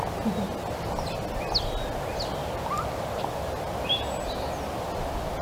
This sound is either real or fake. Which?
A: real